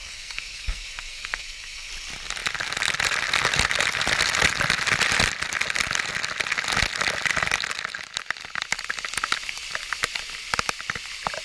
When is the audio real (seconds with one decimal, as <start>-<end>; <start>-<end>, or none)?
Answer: 1.9-11.4